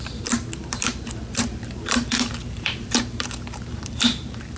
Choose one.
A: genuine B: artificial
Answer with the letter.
B